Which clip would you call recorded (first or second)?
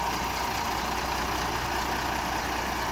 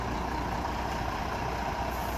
first